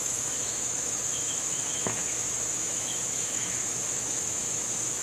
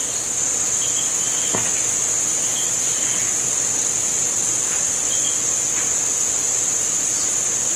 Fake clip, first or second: first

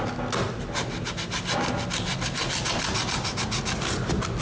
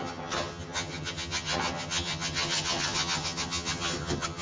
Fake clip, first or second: second